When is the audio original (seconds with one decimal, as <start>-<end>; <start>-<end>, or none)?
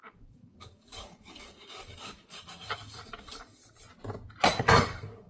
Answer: 3.6-4.6